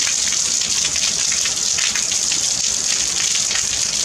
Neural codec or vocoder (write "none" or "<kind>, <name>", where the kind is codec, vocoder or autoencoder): none